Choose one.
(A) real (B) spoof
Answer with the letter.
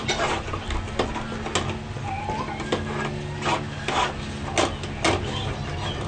A